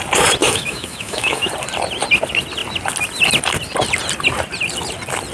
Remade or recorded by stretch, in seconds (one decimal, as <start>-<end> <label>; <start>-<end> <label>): 0.0-0.4 recorded; 0.4-1.5 remade; 1.5-5.3 recorded